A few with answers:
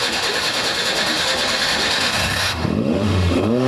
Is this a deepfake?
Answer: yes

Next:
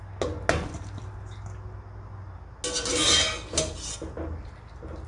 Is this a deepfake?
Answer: no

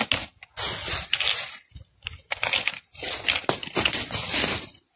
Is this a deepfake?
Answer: no